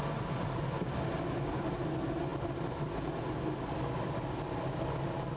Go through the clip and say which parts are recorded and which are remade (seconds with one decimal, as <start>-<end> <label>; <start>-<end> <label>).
0.0-5.4 recorded